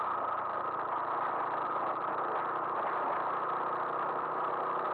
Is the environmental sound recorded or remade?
recorded